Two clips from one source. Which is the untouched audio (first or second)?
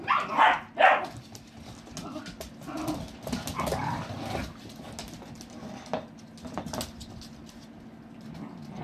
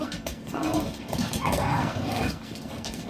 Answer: first